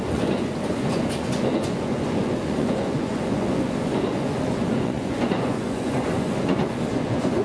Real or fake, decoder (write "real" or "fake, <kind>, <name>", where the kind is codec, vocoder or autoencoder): fake, vocoder, Vocos